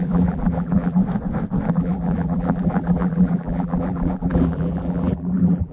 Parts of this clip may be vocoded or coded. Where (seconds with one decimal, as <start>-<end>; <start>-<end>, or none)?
0.0-1.0; 1.7-5.7